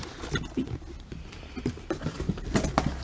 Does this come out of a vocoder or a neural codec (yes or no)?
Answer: no